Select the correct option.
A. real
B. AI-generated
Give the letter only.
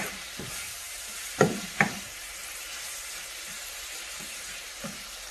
B